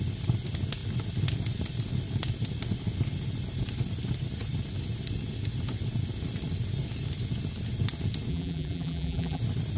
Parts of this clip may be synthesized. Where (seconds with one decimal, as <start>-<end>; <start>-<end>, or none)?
8.3-9.4

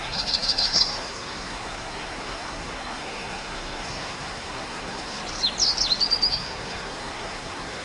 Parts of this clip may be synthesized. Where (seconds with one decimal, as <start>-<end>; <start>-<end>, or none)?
0.0-5.2; 6.3-7.8